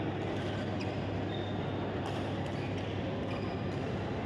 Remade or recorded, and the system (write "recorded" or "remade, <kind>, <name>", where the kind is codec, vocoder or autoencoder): recorded